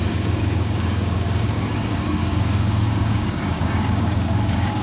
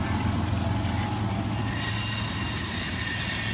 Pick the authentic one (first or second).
second